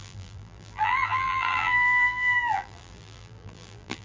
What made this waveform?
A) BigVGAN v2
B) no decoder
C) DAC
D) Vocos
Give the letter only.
A